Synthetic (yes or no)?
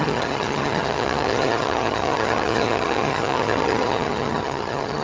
yes